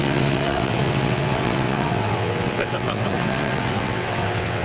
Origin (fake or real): fake